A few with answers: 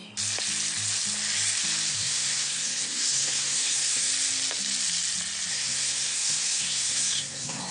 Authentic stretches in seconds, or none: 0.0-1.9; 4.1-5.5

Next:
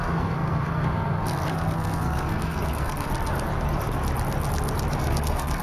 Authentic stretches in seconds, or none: 3.1-5.0

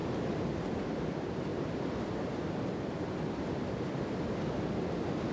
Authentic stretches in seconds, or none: 0.0-5.3

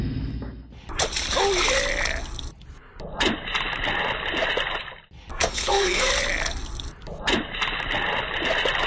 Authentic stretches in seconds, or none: 0.0-5.3; 6.1-8.9

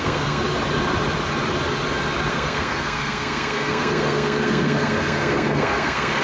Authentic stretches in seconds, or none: 0.4-2.3